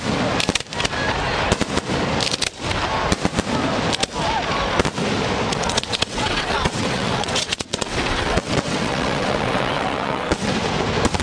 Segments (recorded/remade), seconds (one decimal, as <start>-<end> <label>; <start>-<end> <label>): 0.0-5.5 recorded; 5.5-10.5 remade; 10.5-11.2 recorded